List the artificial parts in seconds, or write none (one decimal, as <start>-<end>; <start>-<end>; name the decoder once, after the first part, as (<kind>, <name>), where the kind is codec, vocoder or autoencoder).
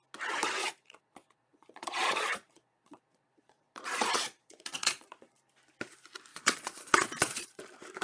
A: 0.6-5.4 (vocoder, Vocos); 6.3-7.6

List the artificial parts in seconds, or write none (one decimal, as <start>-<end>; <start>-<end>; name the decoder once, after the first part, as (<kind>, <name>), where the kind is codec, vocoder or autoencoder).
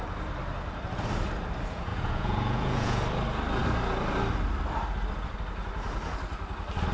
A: 1.9-3.0 (vocoder, Vocos)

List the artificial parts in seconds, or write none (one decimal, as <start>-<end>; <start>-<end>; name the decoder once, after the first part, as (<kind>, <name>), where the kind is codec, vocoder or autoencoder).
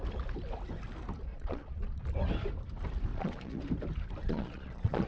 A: 1.3-2.0 (vocoder, Vocos); 3.1-3.6; 4.2-5.1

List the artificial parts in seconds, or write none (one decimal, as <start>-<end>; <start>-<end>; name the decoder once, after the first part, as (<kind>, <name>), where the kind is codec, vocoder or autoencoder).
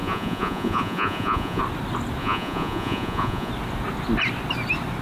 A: 0.0-1.6 (vocoder, Vocos); 2.2-3.5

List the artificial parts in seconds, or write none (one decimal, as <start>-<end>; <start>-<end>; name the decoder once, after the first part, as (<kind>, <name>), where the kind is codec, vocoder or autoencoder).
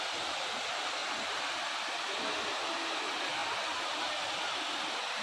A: none